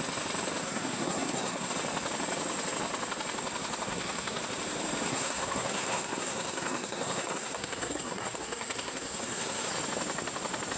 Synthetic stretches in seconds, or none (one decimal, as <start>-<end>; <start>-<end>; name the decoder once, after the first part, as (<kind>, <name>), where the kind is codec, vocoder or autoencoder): 0.6-1.7 (codec, SNAC); 3.9-4.4; 5.1-9.7